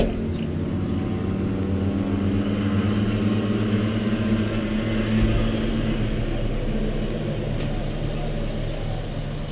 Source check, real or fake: real